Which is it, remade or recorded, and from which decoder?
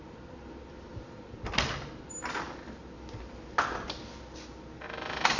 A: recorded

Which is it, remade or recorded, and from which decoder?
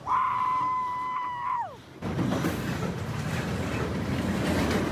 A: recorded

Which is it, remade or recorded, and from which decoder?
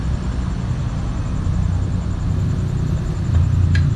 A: recorded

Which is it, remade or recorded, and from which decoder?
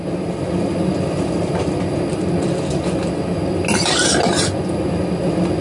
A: recorded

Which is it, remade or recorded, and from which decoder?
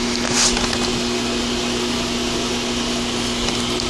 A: recorded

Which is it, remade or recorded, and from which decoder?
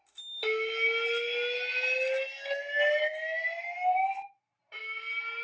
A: recorded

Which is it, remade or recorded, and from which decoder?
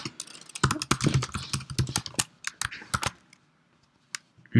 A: recorded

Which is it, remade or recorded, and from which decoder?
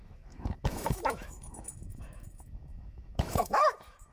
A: remade, autoencoder, DAC-VAE